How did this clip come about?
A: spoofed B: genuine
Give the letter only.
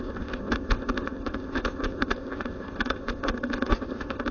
A